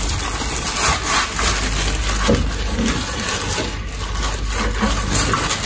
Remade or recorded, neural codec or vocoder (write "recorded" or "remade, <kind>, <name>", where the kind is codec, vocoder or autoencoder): recorded